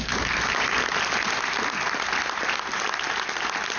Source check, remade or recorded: recorded